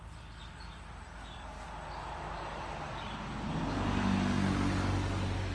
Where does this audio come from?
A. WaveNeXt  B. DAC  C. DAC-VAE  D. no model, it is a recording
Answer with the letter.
D